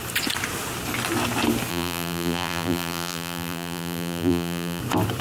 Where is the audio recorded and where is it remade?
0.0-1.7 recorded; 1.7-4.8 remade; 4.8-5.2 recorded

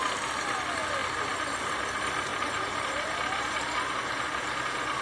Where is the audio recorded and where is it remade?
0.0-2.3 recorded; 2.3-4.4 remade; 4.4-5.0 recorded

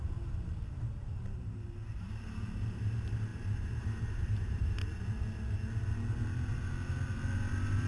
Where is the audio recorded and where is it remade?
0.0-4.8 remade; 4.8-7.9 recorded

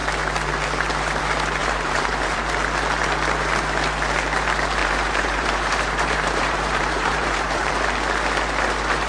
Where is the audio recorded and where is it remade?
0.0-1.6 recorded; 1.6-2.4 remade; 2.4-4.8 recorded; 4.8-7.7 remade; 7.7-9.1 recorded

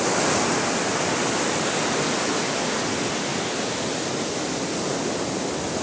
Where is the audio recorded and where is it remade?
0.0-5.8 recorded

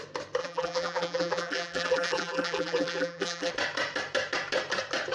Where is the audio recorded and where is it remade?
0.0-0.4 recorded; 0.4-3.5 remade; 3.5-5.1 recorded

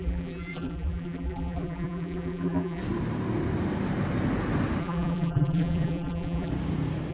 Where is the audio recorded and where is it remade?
0.0-2.8 remade; 2.8-4.8 recorded; 4.8-6.5 remade; 6.5-7.1 recorded